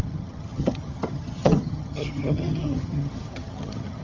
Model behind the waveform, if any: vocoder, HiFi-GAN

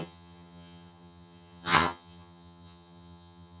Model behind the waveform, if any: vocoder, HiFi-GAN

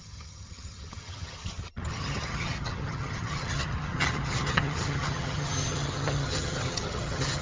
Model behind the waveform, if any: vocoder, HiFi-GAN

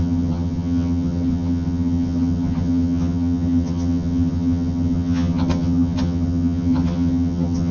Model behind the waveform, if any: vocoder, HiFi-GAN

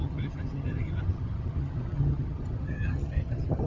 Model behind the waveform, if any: vocoder, HiFi-GAN